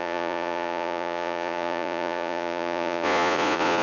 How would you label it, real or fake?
fake